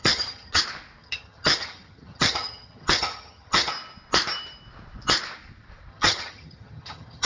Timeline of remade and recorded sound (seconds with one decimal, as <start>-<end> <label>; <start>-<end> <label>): 0.0-0.6 remade; 0.6-1.0 recorded; 1.0-3.7 remade; 3.7-5.9 recorded; 5.9-7.3 remade